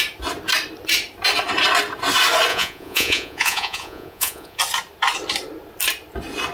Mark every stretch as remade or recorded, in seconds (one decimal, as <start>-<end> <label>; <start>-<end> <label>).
0.0-2.5 recorded; 2.5-4.6 remade; 4.6-6.5 recorded